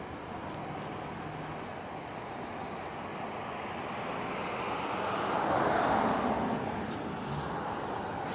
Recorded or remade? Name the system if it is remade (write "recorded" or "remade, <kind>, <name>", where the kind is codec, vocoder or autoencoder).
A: recorded